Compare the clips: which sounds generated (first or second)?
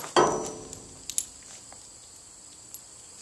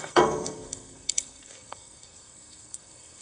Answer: second